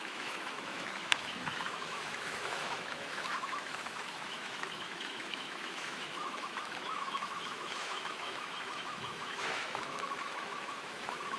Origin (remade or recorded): remade